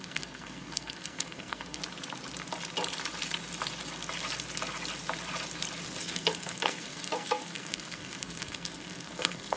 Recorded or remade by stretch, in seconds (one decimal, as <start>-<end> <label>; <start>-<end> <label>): 0.0-1.8 remade; 1.8-6.0 recorded; 6.0-9.6 remade